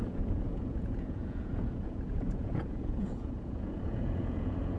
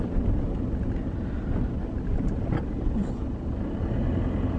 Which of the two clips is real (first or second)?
second